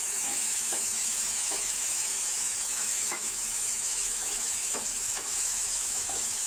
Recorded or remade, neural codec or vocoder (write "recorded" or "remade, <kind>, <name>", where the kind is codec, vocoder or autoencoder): remade, autoencoder, DAC-VAE